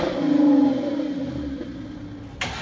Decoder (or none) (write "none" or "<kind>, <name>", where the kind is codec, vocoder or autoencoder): none